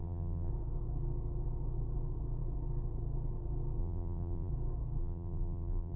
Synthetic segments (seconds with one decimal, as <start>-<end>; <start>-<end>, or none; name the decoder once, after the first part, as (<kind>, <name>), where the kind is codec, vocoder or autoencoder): 0.0-0.5 (vocoder, BigVGAN v2); 3.8-4.5; 5.0-6.0